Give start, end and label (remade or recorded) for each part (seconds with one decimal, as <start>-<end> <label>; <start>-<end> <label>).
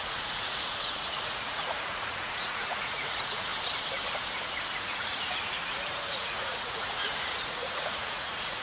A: 0.0-3.5 remade; 3.5-4.7 recorded; 4.7-8.6 remade